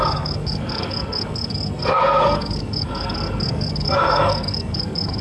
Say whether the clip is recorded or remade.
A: remade